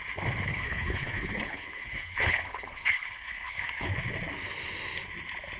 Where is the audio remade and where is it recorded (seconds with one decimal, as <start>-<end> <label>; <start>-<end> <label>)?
0.0-0.5 recorded; 0.5-3.9 remade; 3.9-5.6 recorded

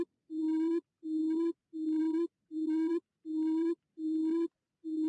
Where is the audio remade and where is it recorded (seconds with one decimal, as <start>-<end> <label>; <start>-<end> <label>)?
0.0-5.1 recorded

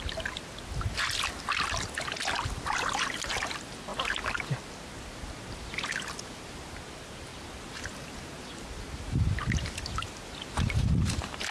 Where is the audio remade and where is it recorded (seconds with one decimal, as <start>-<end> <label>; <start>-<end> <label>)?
0.0-11.5 recorded

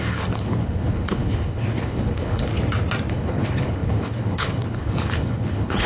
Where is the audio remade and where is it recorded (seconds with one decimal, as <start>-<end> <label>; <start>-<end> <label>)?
0.0-2.5 remade; 2.5-3.1 recorded; 3.1-5.9 remade

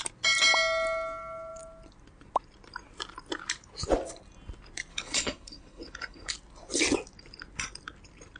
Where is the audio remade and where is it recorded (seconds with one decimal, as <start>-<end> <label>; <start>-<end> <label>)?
0.0-4.9 recorded; 4.9-6.3 remade; 6.3-8.4 recorded